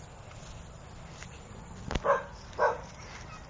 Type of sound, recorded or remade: recorded